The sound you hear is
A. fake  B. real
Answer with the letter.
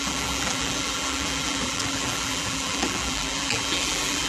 A